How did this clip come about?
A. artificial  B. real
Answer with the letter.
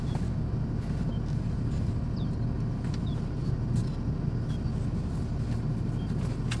B